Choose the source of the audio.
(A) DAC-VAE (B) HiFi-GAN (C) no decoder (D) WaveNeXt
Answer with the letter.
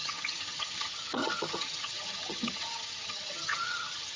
B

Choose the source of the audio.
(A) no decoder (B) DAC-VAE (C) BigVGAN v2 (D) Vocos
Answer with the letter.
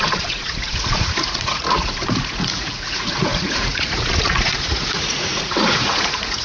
D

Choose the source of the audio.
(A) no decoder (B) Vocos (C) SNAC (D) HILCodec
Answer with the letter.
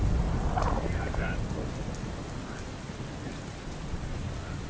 A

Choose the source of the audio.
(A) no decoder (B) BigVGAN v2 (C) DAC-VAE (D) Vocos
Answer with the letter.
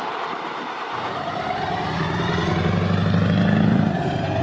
B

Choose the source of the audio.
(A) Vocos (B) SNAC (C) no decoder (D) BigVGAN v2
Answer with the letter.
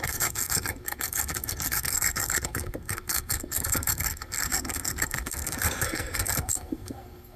B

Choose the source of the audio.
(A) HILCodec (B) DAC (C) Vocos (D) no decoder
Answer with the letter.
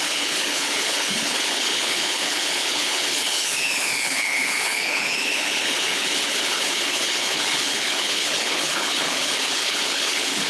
A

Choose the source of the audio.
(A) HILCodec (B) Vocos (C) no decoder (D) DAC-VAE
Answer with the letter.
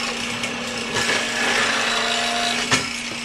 C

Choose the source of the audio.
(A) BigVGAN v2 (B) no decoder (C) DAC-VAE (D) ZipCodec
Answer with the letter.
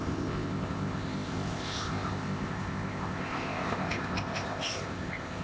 D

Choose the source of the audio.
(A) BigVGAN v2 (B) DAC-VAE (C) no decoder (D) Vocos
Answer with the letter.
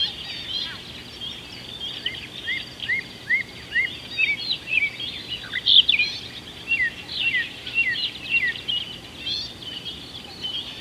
C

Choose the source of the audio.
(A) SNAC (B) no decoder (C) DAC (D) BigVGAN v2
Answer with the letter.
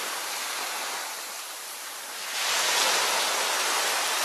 B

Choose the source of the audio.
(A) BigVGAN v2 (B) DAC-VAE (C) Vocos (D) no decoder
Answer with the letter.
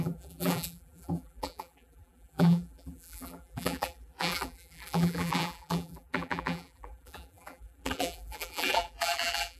A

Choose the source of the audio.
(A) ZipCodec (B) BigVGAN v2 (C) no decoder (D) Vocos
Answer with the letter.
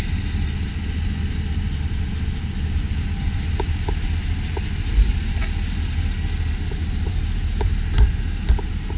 C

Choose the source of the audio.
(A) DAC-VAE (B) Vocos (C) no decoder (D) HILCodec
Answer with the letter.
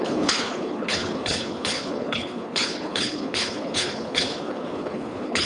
D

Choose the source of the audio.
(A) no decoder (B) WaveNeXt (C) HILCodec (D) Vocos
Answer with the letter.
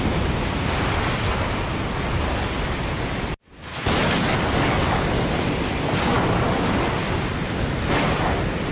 A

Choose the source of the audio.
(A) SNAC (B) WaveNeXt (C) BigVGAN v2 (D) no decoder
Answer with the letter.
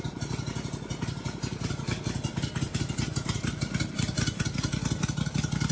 D